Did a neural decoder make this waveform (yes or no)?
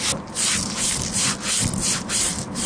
no